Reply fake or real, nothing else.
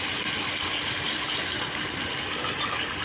real